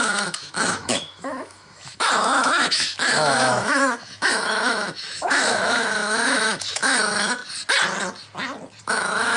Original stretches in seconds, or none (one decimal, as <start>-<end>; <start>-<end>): 7.4-8.8

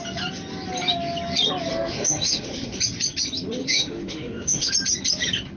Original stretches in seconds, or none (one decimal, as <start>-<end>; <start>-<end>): 0.0-1.7; 2.8-3.6; 4.7-5.6

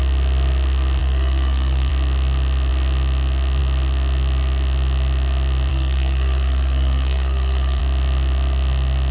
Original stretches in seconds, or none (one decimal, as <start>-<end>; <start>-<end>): 0.0-1.0; 1.9-5.7; 7.8-9.1

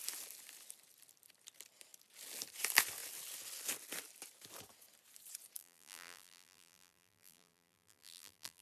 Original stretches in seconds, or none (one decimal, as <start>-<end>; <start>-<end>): 0.0-5.6

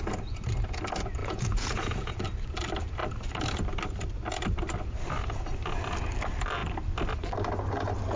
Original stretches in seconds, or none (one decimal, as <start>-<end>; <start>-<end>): 0.0-1.2; 2.1-8.2

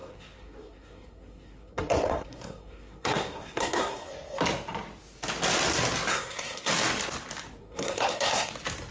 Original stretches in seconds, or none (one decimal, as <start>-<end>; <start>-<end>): 4.1-6.1; 6.7-7.6; 8.5-8.9

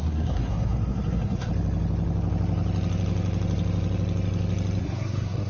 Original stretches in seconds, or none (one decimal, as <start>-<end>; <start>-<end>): 1.5-4.8

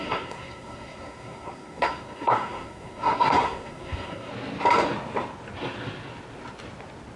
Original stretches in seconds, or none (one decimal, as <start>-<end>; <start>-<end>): 4.3-7.2